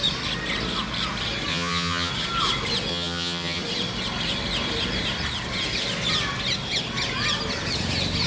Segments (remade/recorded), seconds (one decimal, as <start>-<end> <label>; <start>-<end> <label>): 0.0-1.5 recorded; 1.5-2.1 remade; 2.1-2.9 recorded; 2.9-3.6 remade; 3.6-8.3 recorded